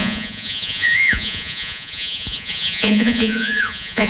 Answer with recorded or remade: remade